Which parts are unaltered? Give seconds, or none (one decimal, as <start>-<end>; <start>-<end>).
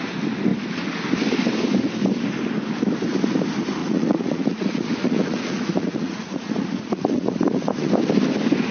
0.0-3.8; 7.9-8.7